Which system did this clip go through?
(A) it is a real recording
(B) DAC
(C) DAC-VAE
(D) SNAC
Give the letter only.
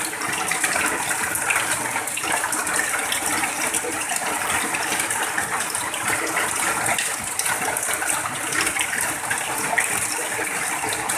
A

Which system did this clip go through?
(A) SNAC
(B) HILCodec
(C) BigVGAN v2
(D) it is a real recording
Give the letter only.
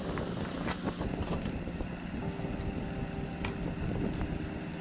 D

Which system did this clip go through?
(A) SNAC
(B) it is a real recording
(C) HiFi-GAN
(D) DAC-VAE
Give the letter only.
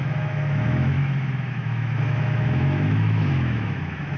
D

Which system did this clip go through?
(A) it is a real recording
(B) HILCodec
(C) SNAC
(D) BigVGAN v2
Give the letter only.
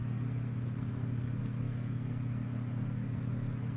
C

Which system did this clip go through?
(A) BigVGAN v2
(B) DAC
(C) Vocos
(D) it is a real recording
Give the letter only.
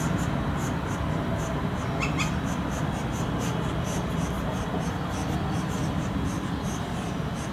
D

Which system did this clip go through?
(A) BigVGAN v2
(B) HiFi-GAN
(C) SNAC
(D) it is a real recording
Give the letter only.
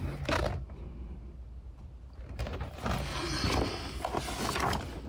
D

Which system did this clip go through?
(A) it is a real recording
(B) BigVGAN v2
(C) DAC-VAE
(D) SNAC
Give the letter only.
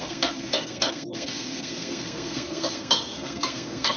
D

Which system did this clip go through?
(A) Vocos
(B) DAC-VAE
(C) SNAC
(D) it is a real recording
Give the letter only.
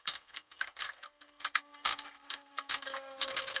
C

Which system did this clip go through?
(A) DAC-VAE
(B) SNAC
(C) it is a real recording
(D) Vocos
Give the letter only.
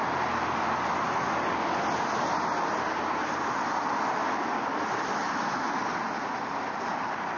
C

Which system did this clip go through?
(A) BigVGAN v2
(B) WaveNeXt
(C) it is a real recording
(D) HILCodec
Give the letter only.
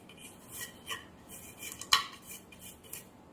C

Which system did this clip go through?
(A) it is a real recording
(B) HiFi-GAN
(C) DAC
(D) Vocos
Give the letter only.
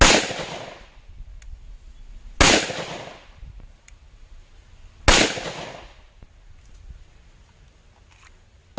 A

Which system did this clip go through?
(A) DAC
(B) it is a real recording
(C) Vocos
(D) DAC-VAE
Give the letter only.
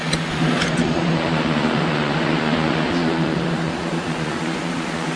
C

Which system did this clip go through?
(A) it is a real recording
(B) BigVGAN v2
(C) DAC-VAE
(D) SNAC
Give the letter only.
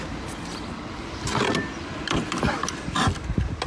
A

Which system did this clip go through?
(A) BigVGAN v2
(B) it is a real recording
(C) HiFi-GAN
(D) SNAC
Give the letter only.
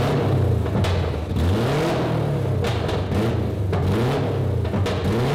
B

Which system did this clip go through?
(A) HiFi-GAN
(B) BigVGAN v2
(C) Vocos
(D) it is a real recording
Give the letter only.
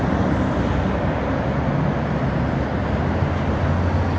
D